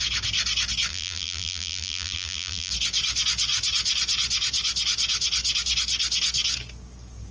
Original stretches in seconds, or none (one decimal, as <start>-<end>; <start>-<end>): 0.0-0.9; 2.7-7.3